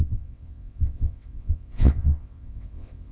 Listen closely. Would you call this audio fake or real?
fake